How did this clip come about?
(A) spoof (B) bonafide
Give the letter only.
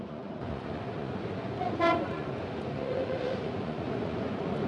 A